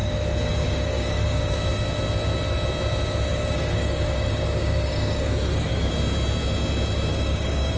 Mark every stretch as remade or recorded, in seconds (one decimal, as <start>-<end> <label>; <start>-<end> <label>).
0.0-1.5 remade; 1.5-3.3 recorded; 3.3-5.9 remade; 5.9-7.1 recorded; 7.1-7.8 remade